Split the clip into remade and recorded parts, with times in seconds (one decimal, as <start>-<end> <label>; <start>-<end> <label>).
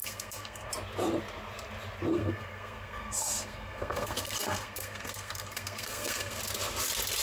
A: 0.0-0.7 remade; 0.7-2.1 recorded; 2.1-6.4 remade; 6.4-7.2 recorded